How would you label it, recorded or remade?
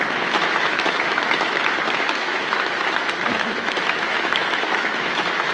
remade